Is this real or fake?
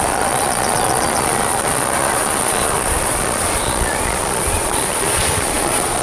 fake